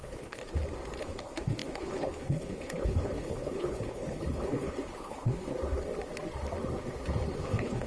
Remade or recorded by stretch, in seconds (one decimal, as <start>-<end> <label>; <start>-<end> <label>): 0.0-0.4 remade; 0.4-1.0 recorded; 1.0-5.5 remade; 5.5-7.4 recorded; 7.4-7.9 remade